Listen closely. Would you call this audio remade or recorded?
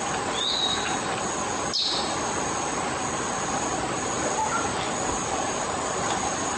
recorded